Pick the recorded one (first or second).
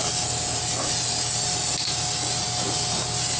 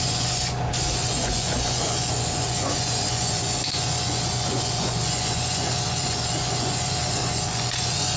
first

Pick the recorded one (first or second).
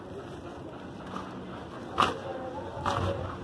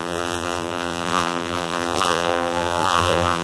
first